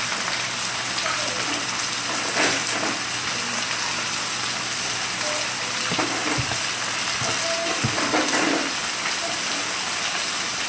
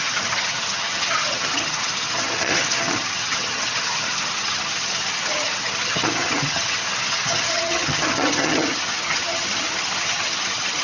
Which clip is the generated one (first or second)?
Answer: second